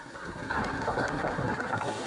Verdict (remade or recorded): remade